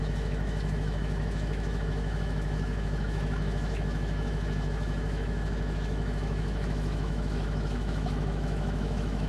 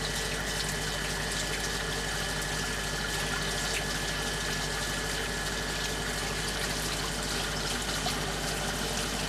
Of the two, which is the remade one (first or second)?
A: first